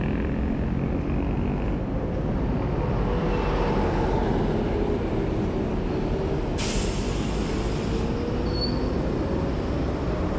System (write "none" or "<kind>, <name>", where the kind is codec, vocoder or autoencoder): none